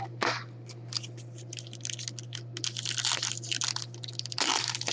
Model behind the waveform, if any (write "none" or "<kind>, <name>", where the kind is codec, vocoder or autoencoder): none